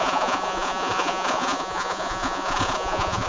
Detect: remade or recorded remade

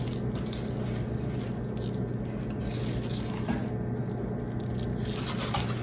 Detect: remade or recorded recorded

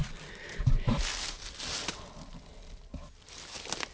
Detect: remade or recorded recorded